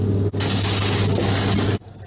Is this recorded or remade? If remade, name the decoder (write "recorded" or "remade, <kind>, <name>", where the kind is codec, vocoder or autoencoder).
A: recorded